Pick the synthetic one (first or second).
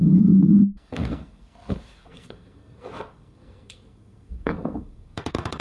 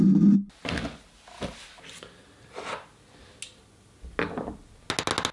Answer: first